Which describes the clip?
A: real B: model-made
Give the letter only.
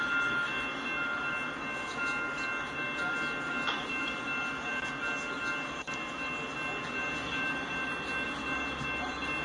A